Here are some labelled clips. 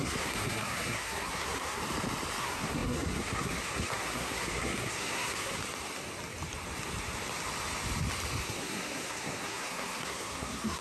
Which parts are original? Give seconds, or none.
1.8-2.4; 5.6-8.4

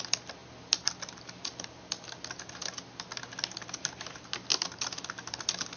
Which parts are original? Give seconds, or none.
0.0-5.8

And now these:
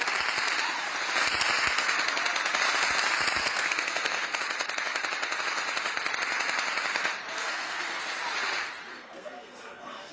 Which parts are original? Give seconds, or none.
0.0-3.4; 4.4-7.4; 8.0-8.9